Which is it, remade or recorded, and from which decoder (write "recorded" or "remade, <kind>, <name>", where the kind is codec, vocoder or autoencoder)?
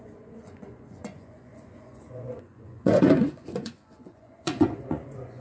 remade, vocoder, Vocos